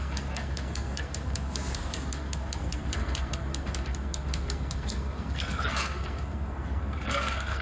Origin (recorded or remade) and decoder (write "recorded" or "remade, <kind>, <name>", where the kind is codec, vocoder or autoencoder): remade, codec, SNAC